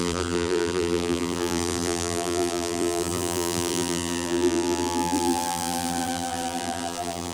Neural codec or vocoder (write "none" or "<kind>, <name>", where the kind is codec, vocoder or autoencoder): vocoder, BigVGAN v2